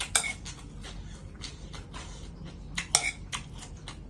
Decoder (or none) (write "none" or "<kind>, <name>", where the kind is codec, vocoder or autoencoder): none